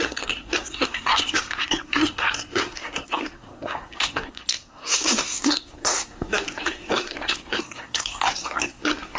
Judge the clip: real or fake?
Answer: fake